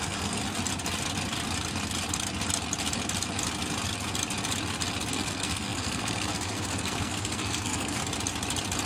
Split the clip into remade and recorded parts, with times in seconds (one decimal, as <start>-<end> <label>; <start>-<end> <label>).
0.0-0.4 remade; 0.4-5.1 recorded; 5.1-8.0 remade; 8.0-8.9 recorded